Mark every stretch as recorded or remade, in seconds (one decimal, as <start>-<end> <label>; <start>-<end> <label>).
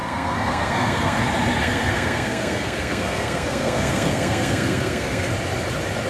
0.0-1.2 remade; 1.2-1.6 recorded; 1.6-5.3 remade; 5.3-6.1 recorded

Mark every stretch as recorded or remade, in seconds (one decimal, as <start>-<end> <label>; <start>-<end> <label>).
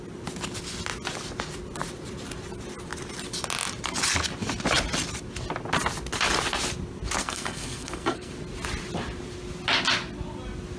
0.0-7.2 recorded; 7.2-8.3 remade; 8.3-10.8 recorded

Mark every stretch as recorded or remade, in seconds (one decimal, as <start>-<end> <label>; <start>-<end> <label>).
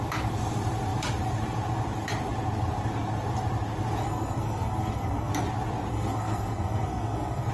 0.0-4.0 recorded; 4.0-5.3 remade; 5.3-5.9 recorded; 5.9-7.5 remade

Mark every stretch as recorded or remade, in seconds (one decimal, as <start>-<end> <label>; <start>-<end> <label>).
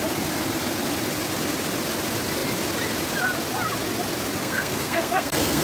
0.0-4.4 recorded; 4.4-5.6 remade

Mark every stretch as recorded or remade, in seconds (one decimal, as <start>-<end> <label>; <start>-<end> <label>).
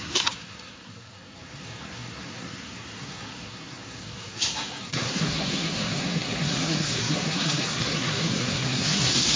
0.0-9.4 remade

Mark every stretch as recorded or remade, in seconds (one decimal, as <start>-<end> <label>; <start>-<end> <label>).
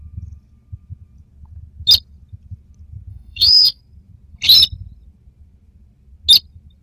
0.0-3.1 recorded; 3.1-3.8 remade; 3.8-6.8 recorded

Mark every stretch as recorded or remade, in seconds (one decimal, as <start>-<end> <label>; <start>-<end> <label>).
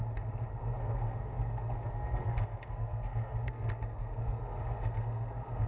0.0-0.6 recorded; 0.6-5.7 remade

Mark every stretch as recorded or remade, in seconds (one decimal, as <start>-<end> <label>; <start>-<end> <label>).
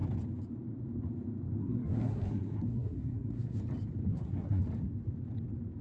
0.0-1.6 recorded; 1.6-3.6 remade; 3.6-4.1 recorded; 4.1-4.6 remade; 4.6-5.8 recorded